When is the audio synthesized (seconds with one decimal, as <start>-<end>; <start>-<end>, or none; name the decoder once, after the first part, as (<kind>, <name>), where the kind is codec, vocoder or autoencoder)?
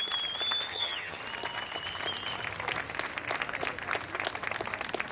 0.7-1.2 (vocoder, HiFi-GAN)